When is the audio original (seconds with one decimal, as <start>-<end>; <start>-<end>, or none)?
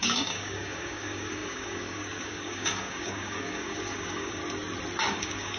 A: 4.4-5.1